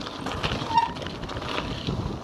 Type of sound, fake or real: real